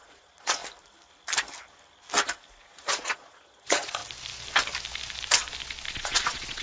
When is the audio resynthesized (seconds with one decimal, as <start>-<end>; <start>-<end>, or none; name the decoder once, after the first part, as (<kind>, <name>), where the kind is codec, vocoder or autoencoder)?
0.0-0.6 (vocoder, Vocos); 2.6-4.0; 5.9-6.6